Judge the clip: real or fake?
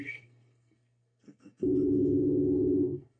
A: fake